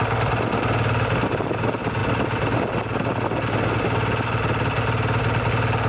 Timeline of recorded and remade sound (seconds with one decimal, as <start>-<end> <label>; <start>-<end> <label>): 0.0-5.9 recorded